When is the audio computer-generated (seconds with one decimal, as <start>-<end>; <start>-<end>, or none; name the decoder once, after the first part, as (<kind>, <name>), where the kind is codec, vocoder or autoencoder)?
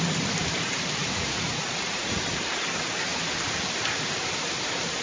1.0-2.2 (vocoder, Vocos)